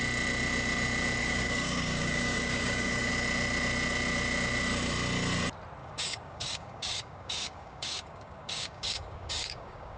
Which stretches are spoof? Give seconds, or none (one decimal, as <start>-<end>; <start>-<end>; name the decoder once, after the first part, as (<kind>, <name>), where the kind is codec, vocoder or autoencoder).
1.2-3.1 (codec, DAC); 5.8-10.0